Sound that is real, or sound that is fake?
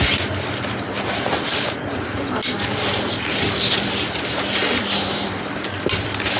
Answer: real